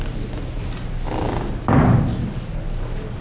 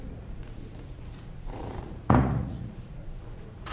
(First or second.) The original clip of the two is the first